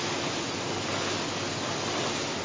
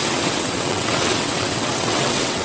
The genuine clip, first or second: first